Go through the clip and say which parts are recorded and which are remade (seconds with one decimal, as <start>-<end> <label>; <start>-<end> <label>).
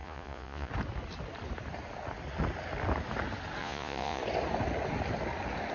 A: 0.0-0.7 remade; 0.7-3.6 recorded; 3.6-4.2 remade; 4.2-5.7 recorded